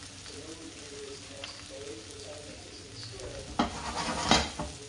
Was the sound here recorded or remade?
recorded